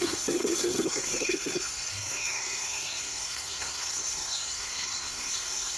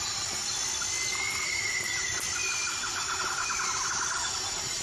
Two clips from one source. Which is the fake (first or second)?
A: first